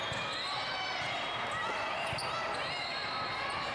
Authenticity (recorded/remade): recorded